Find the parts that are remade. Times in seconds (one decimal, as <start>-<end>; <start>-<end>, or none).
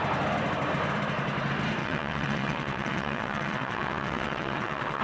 1.8-5.0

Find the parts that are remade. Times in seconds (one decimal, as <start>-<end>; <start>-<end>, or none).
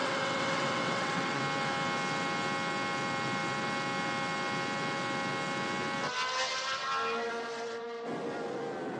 0.0-1.4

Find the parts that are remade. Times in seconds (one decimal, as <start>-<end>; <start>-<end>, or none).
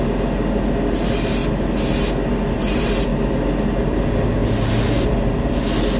none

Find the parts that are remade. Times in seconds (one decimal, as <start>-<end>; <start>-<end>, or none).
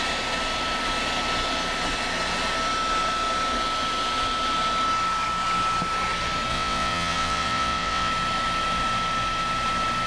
6.5-8.1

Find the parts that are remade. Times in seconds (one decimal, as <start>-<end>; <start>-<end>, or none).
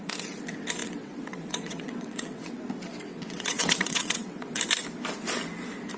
0.8-2.6; 3.1-4.6